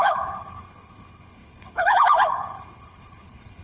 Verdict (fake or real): fake